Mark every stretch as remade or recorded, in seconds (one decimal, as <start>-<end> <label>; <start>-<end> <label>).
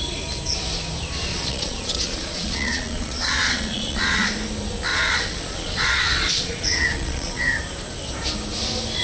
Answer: 0.0-1.3 recorded; 1.3-4.3 remade; 4.3-4.9 recorded; 4.9-7.4 remade; 7.4-9.0 recorded